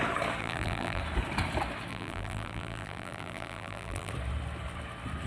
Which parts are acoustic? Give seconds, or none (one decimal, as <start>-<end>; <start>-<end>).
0.0-0.4; 1.0-1.9; 4.1-5.3

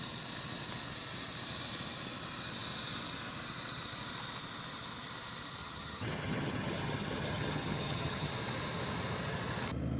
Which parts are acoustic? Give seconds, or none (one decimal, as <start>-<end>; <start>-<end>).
0.0-5.6; 8.3-10.0

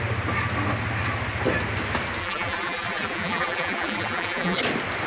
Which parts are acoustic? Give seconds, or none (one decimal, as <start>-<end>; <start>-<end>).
0.0-2.2; 4.6-5.1

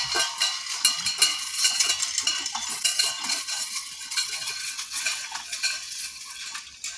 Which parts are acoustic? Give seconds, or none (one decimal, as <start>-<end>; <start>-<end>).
0.0-1.3; 1.9-2.7; 6.4-7.0